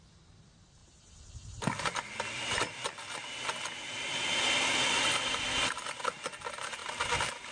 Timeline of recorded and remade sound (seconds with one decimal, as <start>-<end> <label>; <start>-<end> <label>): 0.0-7.5 recorded